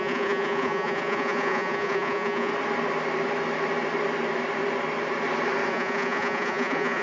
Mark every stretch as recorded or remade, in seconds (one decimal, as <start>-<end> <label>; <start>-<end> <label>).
0.0-2.5 remade; 2.5-5.7 recorded; 5.7-7.0 remade